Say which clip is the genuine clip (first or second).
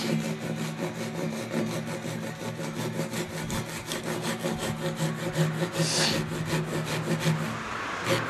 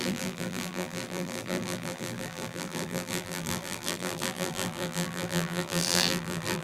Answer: first